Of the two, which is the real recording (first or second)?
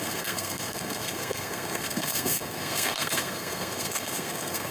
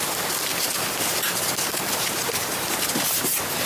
second